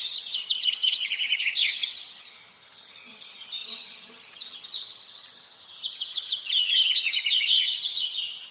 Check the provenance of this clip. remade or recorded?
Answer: remade